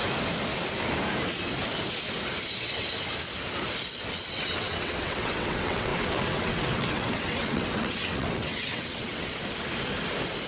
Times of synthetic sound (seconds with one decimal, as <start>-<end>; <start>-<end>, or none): 4.1-9.4